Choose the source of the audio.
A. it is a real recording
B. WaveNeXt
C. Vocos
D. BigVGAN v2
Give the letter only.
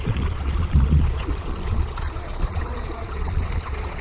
C